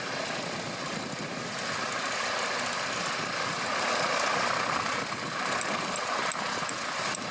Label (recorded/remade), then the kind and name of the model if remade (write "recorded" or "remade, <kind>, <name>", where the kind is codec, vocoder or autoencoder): recorded